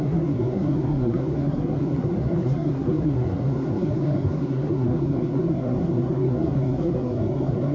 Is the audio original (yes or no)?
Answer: no